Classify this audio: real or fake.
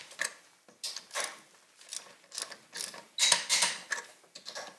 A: real